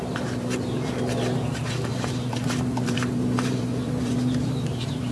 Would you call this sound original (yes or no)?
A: no